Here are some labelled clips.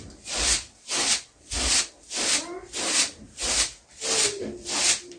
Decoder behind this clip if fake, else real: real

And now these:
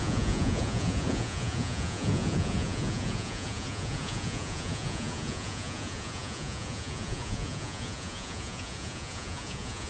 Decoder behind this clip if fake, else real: fake, vocoder, Vocos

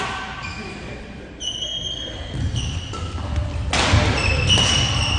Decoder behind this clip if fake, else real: real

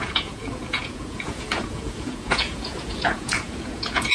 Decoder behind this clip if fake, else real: fake, vocoder, Vocos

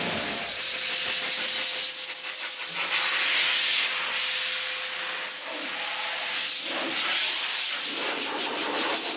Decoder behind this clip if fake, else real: real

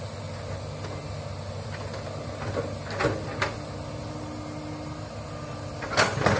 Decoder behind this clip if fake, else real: real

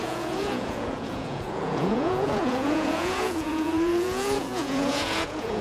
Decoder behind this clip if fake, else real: fake, vocoder, Vocos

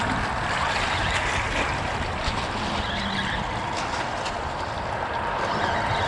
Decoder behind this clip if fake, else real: real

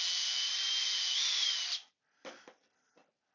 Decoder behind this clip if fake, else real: real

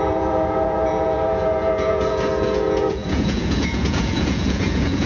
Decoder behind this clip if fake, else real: fake, vocoder, Vocos